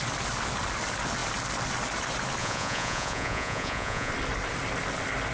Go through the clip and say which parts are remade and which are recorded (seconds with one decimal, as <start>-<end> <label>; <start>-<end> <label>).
0.0-2.4 recorded; 2.4-4.1 remade; 4.1-5.3 recorded